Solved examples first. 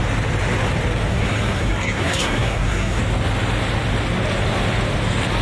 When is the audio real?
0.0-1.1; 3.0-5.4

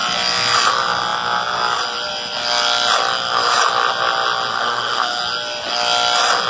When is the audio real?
0.0-4.5; 5.2-6.5

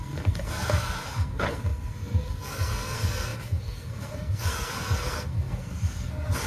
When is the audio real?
none